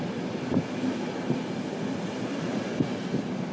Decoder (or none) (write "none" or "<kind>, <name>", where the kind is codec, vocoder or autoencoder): none